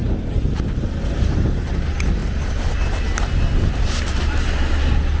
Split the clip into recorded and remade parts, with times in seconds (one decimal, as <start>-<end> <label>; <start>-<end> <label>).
0.0-5.2 recorded